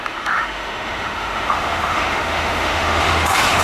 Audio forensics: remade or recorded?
remade